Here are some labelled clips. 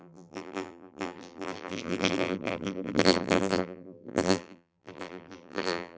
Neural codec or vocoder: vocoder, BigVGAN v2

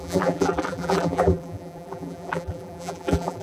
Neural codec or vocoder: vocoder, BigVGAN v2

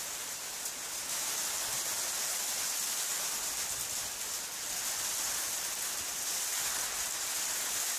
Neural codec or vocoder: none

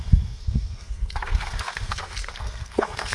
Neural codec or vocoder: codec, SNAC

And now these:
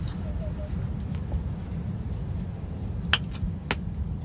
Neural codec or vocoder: none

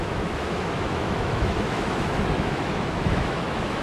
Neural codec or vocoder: autoencoder, DAC-VAE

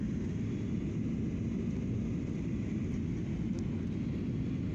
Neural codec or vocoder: none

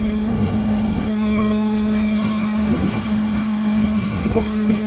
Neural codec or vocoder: codec, SNAC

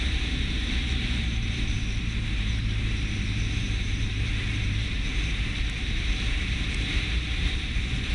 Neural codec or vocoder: vocoder, BigVGAN v2